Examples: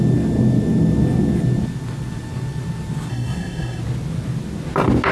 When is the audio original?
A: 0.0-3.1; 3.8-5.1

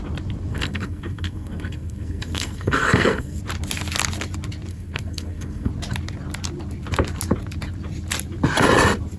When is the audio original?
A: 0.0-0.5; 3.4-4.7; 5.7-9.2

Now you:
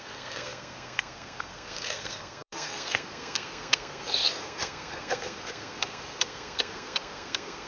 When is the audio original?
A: none

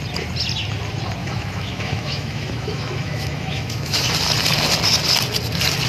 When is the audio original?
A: 0.0-1.2; 4.0-5.9

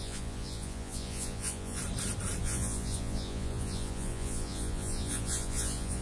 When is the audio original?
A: 1.8-2.4

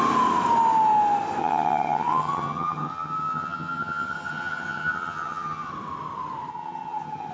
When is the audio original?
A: 0.0-1.4; 5.7-6.5